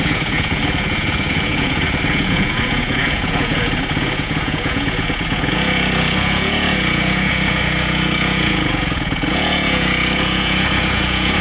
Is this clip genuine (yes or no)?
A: no